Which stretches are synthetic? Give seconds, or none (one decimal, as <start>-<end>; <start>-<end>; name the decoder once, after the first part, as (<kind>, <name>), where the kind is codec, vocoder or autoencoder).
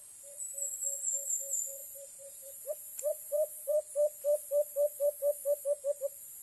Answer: 1.8-3.8 (vocoder, Vocos)